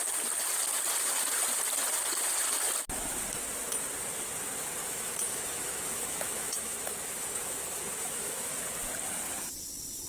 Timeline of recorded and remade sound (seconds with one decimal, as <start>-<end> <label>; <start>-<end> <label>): 0.0-4.8 recorded; 4.8-8.6 remade; 8.6-10.1 recorded

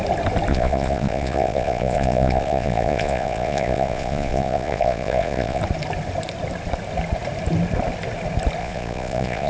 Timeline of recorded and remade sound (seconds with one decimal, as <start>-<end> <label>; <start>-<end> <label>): 0.0-0.5 recorded; 0.5-5.6 remade; 5.6-8.6 recorded; 8.6-9.5 remade

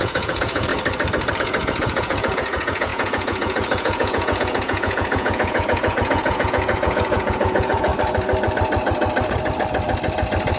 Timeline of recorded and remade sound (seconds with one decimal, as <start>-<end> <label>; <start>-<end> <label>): 0.0-0.7 remade; 0.7-1.4 recorded; 1.4-7.9 remade; 7.9-10.6 recorded

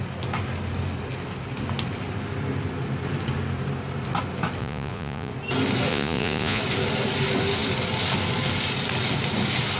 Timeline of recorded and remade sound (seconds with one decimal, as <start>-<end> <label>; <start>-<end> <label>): 0.0-4.6 recorded; 4.6-5.3 remade; 5.3-5.9 recorded; 5.9-6.6 remade; 6.6-9.8 recorded

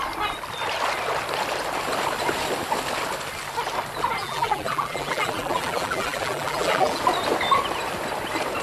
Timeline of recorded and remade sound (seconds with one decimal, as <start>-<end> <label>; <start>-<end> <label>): 0.0-4.2 recorded; 4.2-7.0 remade; 7.0-8.6 recorded